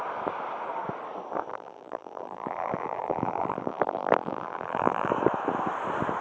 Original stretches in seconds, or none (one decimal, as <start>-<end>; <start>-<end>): 0.0-1.5; 5.1-6.2